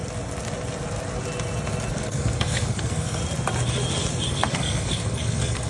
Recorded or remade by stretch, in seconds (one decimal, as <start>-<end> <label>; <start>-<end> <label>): 0.0-1.9 recorded; 1.9-3.2 remade; 3.2-4.3 recorded; 4.3-5.7 remade